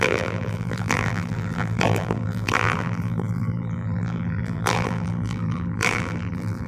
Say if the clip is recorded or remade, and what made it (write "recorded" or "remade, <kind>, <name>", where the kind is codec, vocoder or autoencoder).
remade, vocoder, BigVGAN v2